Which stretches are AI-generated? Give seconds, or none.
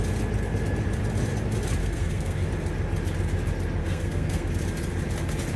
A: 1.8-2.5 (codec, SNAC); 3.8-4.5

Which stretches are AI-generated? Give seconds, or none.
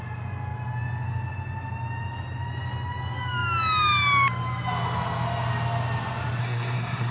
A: 6.4-7.1 (codec, SNAC)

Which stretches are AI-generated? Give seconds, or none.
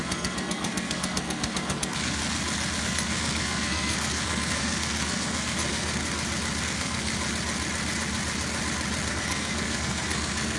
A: 0.0-2.2 (codec, SNAC); 2.8-6.0; 6.6-7.1; 9.1-10.6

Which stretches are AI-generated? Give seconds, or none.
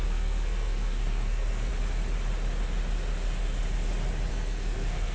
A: 0.0-1.7 (codec, SNAC); 4.3-5.1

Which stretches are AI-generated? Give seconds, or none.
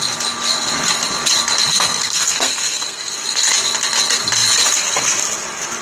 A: 1.7-3.4 (codec, SNAC)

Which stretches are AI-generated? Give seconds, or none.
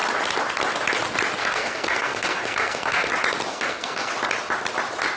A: 1.4-3.1 (codec, SNAC); 3.5-4.1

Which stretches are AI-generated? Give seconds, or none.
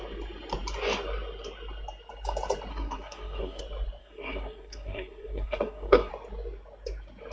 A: 2.7-3.6 (codec, SNAC); 4.0-6.1